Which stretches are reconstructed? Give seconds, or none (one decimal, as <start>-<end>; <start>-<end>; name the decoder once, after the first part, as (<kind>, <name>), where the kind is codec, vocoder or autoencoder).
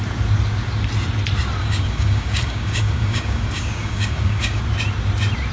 1.6-4.6 (codec, DAC)